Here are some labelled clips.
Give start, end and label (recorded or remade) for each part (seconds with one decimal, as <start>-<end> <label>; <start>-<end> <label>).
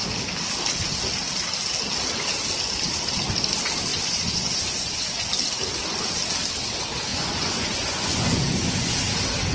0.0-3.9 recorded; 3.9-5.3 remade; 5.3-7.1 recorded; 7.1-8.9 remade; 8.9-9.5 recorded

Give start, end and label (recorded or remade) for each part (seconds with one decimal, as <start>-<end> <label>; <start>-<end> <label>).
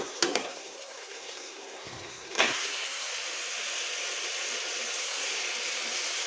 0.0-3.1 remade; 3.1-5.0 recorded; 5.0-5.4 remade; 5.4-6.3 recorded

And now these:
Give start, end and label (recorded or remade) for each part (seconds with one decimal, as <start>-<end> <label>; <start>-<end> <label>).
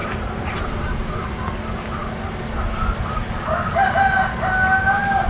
0.0-5.3 recorded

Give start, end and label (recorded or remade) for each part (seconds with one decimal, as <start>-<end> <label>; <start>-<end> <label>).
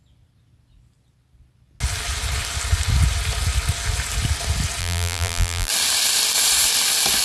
0.0-4.8 recorded; 4.8-5.7 remade; 5.7-7.2 recorded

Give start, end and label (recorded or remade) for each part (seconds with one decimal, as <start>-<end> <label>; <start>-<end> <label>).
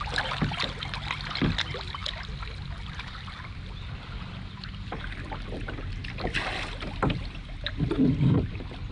0.0-8.9 recorded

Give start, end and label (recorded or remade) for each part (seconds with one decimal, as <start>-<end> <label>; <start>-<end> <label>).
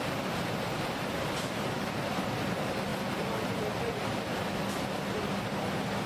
0.0-6.1 recorded